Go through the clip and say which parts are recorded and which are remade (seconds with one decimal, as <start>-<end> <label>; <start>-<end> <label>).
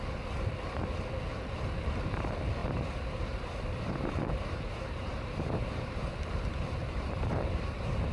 0.0-2.6 recorded; 2.6-6.1 remade; 6.1-6.8 recorded; 6.8-8.1 remade